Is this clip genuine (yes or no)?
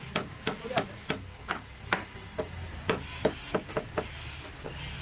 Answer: yes